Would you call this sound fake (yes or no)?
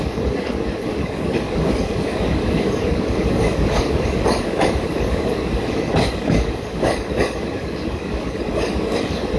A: yes